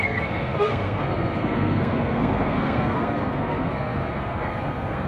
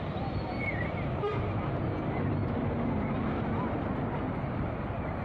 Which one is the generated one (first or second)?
first